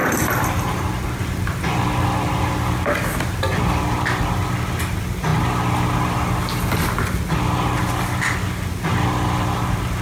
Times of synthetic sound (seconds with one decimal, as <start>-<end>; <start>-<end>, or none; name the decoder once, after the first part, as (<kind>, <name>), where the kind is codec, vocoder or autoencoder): 0.0-1.2 (vocoder, BigVGAN v2)